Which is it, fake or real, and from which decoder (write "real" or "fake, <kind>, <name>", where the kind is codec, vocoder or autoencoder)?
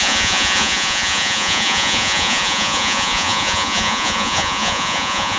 fake, vocoder, Vocos